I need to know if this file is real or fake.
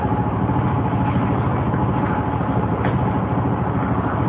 real